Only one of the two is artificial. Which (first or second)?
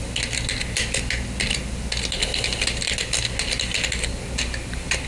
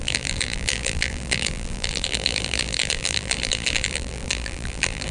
second